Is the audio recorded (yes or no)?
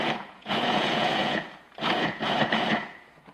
no